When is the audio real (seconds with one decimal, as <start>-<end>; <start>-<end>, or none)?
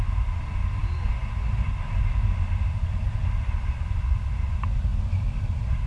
0.0-5.9